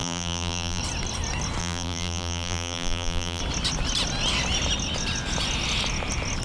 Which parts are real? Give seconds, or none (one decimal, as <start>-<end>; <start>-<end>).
0.8-1.6; 3.4-6.4